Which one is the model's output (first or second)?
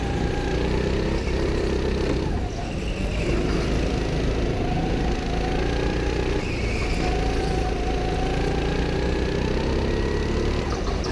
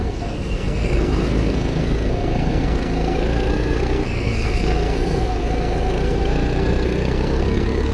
second